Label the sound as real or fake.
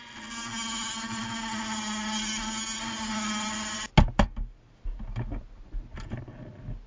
real